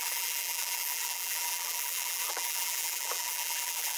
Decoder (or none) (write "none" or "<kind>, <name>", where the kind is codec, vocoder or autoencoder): vocoder, BigVGAN v2